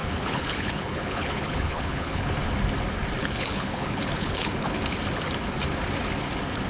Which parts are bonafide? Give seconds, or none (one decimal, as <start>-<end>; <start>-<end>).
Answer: 2.4-3.2; 4.8-6.7